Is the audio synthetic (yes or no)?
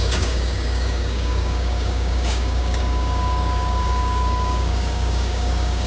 yes